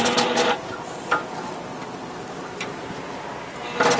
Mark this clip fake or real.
real